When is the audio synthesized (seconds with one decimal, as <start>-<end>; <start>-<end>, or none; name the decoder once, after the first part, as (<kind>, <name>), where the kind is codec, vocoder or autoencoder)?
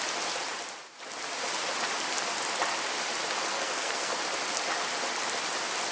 3.5-4.2 (codec, SNAC)